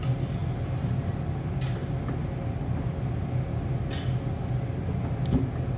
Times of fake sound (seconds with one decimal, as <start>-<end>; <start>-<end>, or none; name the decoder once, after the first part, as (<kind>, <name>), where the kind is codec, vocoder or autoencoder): none